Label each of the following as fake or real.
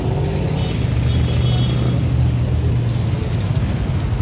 real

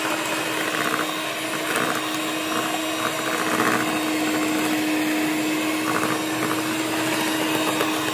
real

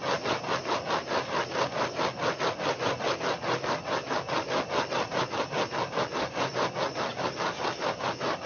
real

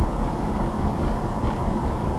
fake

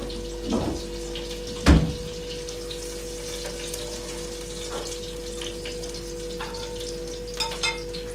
real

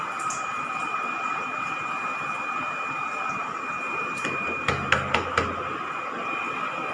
real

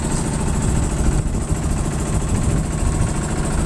real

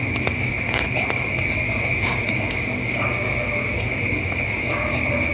fake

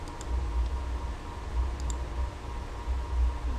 real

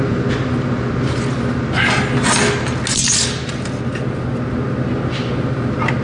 real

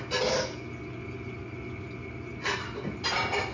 real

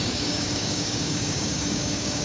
fake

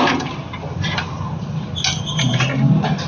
real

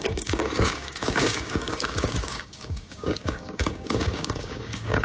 fake